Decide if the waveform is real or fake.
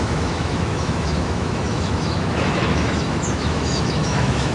fake